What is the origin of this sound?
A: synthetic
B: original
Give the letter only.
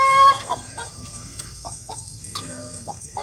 A